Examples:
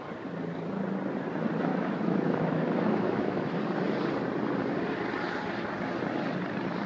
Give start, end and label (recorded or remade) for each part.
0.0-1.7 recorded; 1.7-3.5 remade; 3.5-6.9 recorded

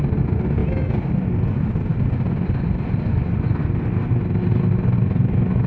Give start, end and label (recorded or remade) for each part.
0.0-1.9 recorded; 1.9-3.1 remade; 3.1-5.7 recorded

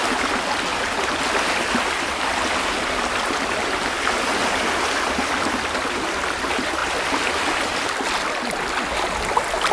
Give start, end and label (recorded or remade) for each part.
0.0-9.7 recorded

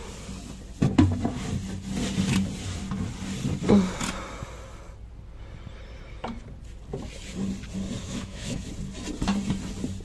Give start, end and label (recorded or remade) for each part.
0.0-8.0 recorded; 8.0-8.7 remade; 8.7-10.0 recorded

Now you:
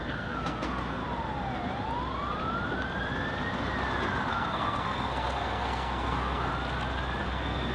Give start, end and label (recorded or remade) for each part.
0.0-1.0 remade; 1.0-4.3 recorded; 4.3-6.5 remade; 6.5-7.2 recorded; 7.2-7.7 remade

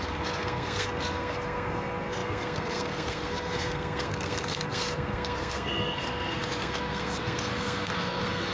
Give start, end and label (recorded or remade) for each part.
0.0-8.5 remade